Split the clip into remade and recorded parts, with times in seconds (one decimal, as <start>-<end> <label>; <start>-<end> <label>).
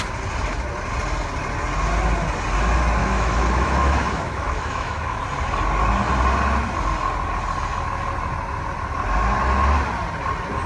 0.0-3.0 recorded; 3.0-5.2 remade; 5.2-10.7 recorded